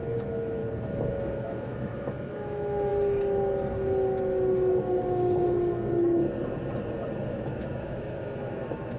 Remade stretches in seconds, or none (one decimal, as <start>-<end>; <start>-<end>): 0.0-0.6; 1.1-2.9; 7.3-9.0